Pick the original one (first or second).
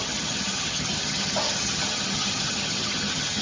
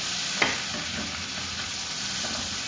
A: second